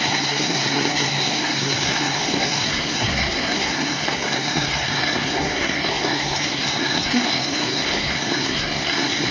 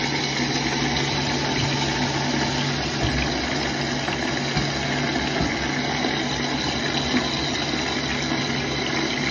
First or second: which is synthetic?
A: first